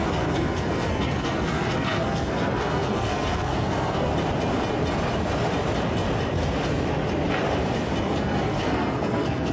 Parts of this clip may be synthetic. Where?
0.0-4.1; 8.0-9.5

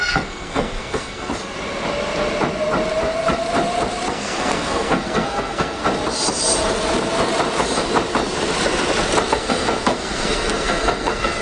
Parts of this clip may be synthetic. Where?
0.0-1.3; 4.1-5.8; 9.3-11.4

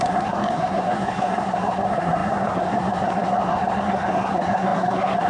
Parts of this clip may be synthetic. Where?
0.0-5.3

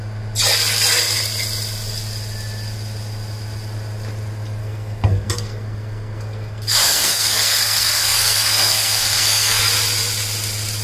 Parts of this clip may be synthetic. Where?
4.6-9.6

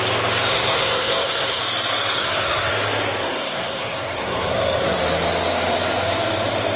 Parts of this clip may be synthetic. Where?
0.5-1.6; 2.1-2.7; 3.2-5.0